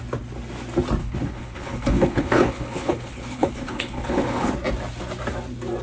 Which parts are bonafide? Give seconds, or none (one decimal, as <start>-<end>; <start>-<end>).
0.0-1.0; 4.5-5.8